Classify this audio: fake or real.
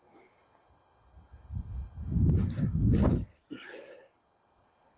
real